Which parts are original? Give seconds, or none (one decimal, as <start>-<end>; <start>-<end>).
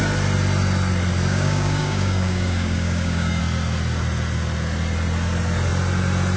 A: 0.0-1.3; 3.4-6.4